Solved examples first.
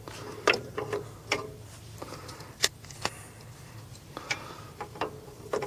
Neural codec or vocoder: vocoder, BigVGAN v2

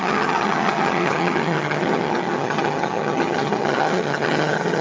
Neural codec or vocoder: vocoder, HiFi-GAN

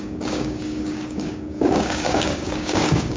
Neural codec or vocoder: codec, DAC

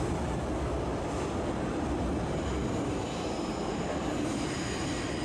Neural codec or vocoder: none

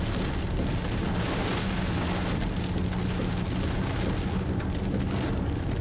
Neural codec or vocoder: none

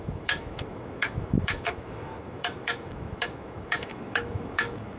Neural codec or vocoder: autoencoder, DAC-VAE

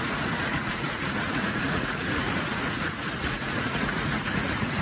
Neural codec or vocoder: vocoder, Vocos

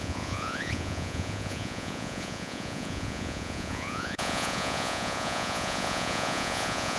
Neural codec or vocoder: vocoder, Vocos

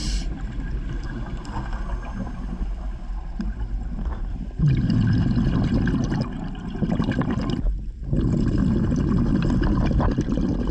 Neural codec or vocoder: none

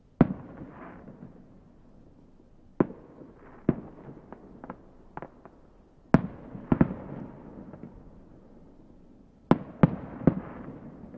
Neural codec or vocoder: none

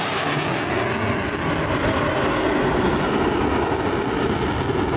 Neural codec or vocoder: none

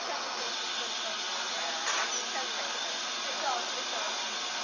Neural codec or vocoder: none